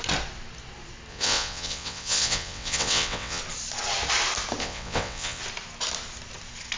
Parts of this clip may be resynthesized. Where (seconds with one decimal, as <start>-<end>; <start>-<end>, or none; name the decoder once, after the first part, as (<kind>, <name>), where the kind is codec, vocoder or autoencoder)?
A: 1.1-3.4 (vocoder, WaveNeXt); 4.6-5.4